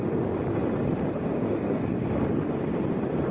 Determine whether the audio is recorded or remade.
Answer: recorded